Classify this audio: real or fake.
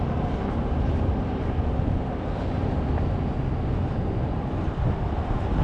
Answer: real